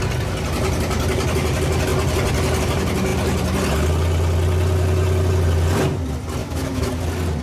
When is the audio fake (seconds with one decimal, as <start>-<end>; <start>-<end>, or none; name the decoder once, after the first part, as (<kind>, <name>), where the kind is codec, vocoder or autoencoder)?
6.4-6.9 (autoencoder, DAC-VAE)